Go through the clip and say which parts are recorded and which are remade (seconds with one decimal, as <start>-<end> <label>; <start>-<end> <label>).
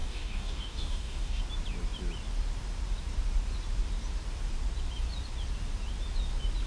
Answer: 0.0-1.4 remade; 1.4-6.7 recorded